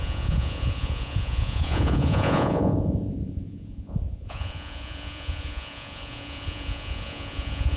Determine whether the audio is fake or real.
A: fake